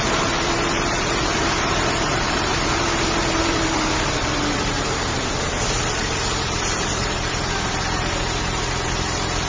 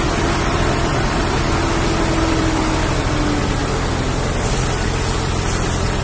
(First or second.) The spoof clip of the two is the first